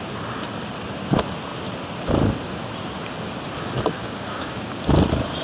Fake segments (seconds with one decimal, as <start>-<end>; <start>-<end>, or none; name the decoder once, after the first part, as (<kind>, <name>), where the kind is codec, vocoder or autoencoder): 4.0-4.8 (codec, DAC)